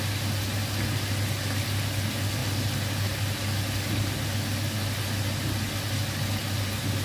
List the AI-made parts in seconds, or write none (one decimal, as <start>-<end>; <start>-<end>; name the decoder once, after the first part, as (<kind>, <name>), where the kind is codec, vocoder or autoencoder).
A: none